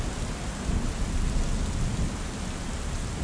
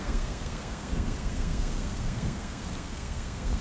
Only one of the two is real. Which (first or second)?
first